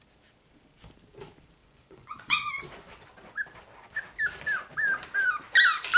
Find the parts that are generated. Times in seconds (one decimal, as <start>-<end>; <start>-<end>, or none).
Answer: 1.6-3.0